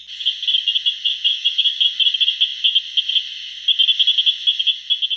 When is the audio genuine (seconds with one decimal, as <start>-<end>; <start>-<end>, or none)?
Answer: 0.0-1.3; 1.8-5.2